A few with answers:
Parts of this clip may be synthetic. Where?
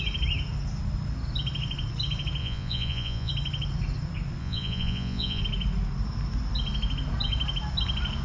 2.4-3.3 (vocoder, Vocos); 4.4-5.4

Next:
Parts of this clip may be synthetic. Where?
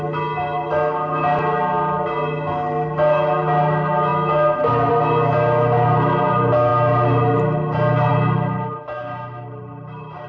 none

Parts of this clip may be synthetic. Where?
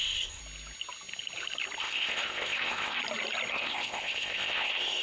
0.0-0.4 (codec, ZipCodec); 1.8-3.0; 3.5-5.0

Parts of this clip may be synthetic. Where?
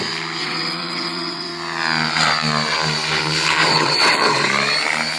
0.4-1.5 (vocoder, WaveNeXt); 3.6-4.5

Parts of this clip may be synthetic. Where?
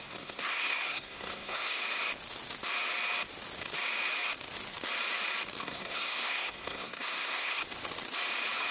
0.0-1.8 (codec, SNAC); 5.6-7.6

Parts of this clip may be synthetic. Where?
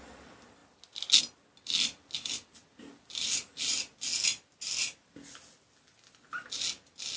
none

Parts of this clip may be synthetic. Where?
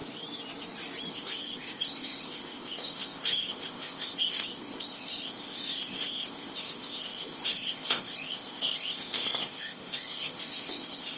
1.1-11.2 (codec, ZipCodec)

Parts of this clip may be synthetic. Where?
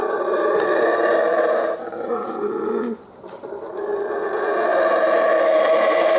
none